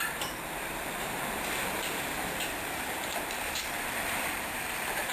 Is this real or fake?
fake